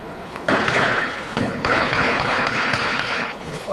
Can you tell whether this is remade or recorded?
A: remade